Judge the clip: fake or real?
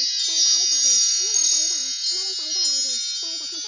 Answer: real